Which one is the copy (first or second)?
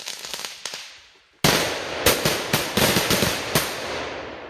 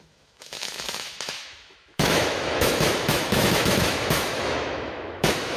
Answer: second